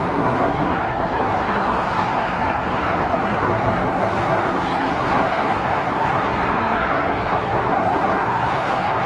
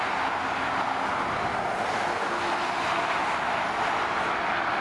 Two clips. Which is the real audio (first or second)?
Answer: second